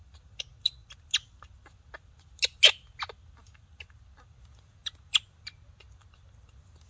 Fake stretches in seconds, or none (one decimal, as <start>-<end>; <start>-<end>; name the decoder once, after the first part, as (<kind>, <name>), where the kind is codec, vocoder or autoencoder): none